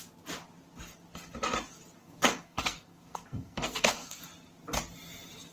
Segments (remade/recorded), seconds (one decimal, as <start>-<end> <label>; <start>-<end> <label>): 0.0-2.0 recorded; 2.0-4.2 remade; 4.2-5.5 recorded